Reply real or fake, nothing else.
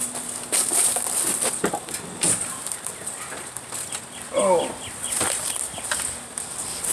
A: real